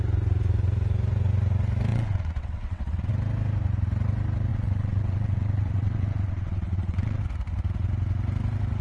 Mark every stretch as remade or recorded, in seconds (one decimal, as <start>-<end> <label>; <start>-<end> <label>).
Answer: 0.0-1.9 recorded; 1.9-3.1 remade; 3.1-4.5 recorded; 4.5-7.2 remade; 7.2-8.8 recorded